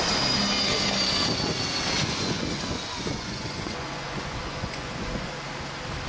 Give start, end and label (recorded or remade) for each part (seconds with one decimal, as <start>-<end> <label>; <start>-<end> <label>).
0.0-2.0 recorded; 2.0-5.3 remade; 5.3-6.1 recorded